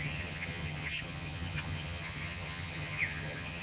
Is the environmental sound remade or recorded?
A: remade